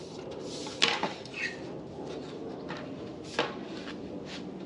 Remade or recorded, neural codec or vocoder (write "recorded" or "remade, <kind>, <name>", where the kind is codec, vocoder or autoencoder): recorded